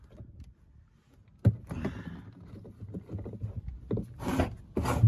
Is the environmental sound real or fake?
real